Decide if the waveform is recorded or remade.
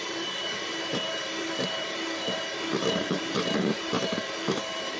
remade